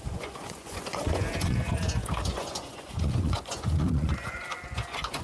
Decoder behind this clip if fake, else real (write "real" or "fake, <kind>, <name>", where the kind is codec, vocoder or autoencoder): fake, vocoder, Vocos